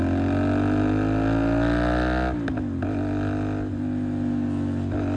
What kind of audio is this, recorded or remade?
recorded